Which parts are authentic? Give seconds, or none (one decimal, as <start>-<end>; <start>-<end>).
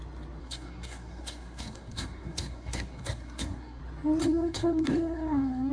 0.0-0.4; 3.8-4.2